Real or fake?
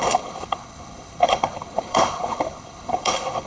fake